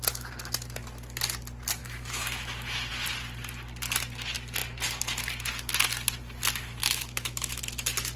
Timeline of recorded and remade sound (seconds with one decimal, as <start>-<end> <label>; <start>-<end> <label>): 0.0-1.8 recorded; 1.8-2.9 remade; 2.9-6.8 recorded; 6.8-7.6 remade; 7.6-8.2 recorded